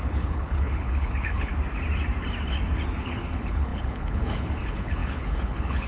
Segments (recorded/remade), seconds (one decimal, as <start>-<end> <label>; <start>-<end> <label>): 0.0-1.5 remade; 1.5-3.0 recorded; 3.0-5.9 remade